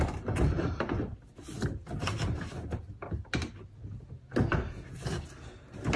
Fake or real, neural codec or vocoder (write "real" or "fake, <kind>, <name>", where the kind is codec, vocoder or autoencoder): real